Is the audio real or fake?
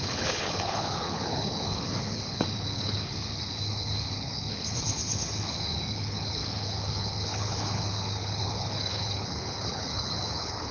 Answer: fake